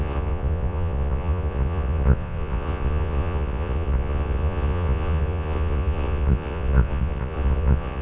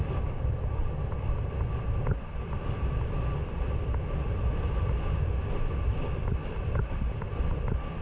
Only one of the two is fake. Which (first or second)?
first